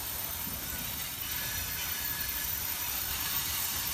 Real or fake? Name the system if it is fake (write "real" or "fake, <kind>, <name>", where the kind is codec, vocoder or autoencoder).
fake, vocoder, BigVGAN v2